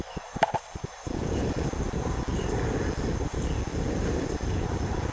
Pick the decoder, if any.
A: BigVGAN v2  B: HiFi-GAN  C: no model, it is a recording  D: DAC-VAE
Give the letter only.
A